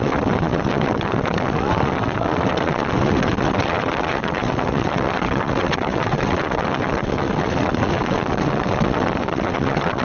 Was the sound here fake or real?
fake